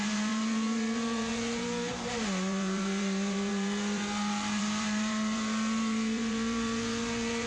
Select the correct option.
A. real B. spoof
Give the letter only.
B